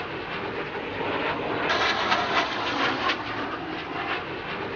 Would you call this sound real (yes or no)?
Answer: yes